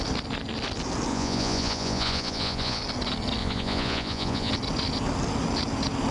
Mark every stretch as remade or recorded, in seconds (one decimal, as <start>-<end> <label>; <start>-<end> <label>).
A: 0.0-1.1 recorded; 1.1-2.8 remade; 2.8-3.4 recorded; 3.4-4.5 remade; 4.5-6.1 recorded